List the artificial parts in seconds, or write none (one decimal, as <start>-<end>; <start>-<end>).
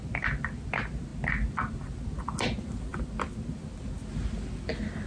none